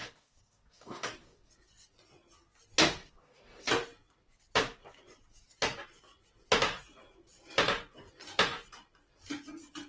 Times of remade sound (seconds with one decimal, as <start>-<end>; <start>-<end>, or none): 0.0-1.5; 3.0-3.7